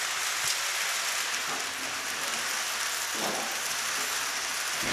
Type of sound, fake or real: real